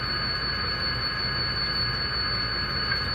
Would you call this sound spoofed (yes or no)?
no